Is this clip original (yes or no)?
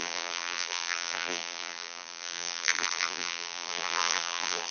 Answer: no